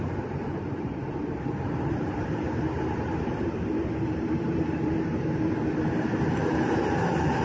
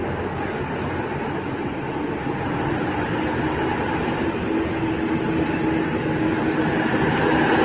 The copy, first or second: first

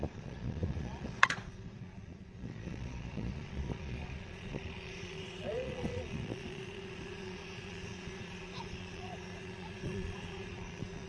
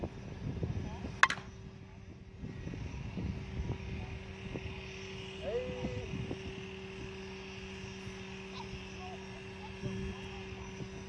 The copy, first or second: first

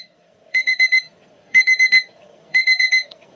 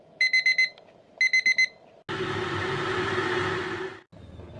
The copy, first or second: first